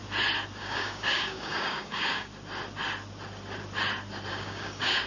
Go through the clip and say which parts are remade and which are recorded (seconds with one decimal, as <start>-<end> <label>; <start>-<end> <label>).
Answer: 0.0-0.6 recorded; 0.6-2.3 remade; 2.3-4.3 recorded; 4.3-5.1 remade